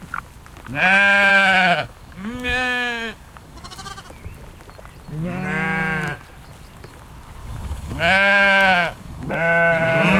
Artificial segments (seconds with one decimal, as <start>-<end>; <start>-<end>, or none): 1.3-3.9; 7.4-9.3